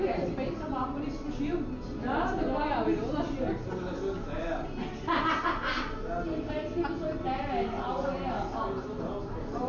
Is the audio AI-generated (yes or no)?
no